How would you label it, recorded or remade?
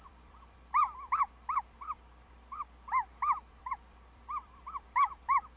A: remade